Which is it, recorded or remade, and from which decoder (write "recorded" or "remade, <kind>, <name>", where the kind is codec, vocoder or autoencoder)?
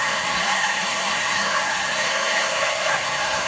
remade, codec, SNAC